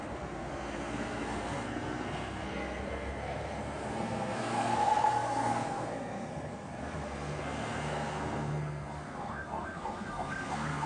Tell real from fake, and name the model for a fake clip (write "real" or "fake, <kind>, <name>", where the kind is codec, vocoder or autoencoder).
fake, codec, SNAC